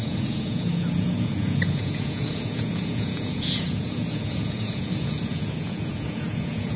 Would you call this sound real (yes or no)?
no